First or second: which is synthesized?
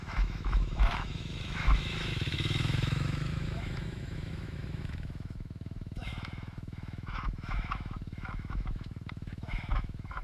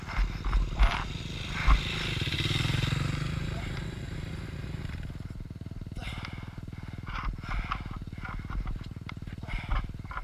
first